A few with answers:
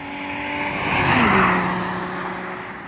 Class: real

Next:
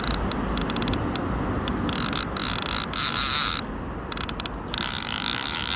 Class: real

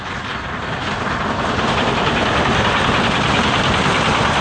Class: real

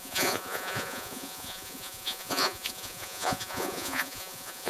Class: fake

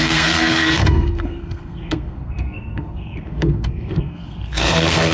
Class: fake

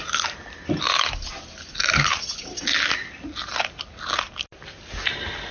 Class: real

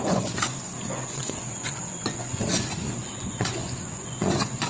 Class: fake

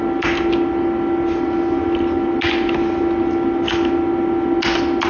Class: real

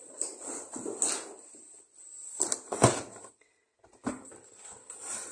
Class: real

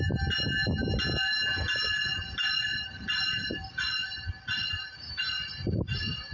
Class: real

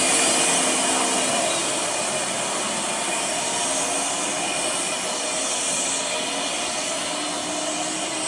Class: real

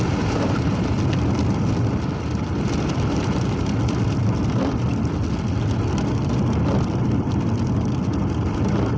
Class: fake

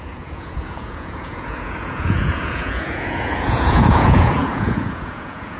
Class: fake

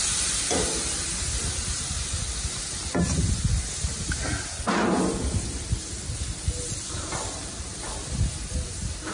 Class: real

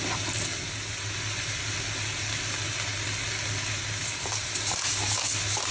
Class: real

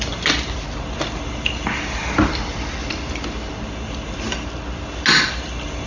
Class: real